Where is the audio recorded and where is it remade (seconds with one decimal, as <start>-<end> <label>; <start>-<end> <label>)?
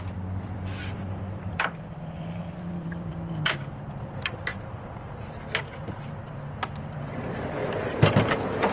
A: 0.0-8.7 remade